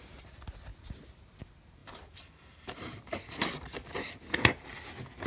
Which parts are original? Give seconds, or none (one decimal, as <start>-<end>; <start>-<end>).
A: 0.0-1.8; 3.9-5.3